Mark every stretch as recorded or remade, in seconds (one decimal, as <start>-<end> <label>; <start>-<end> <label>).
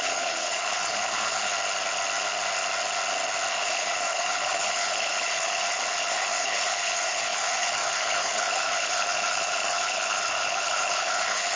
0.0-1.5 remade; 1.5-3.5 recorded; 3.5-11.6 remade